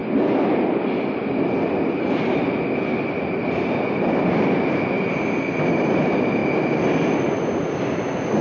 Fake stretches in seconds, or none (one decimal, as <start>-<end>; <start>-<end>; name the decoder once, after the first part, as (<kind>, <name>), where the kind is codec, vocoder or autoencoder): none